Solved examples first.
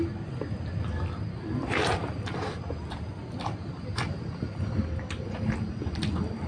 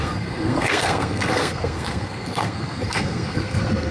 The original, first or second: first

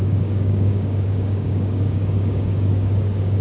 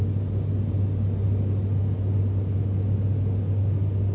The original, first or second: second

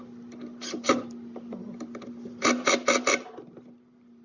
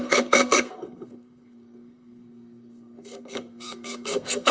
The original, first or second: first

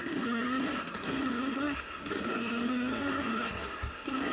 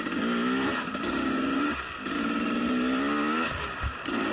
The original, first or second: second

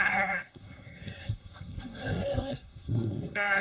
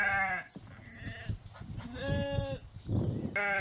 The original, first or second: second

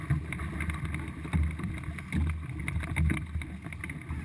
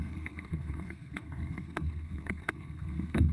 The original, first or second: first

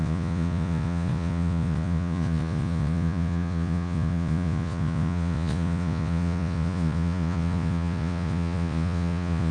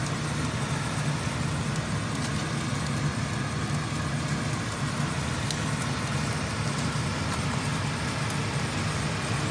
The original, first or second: second